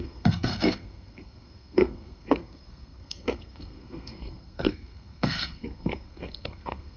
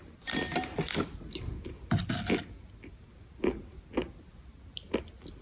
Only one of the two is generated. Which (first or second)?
first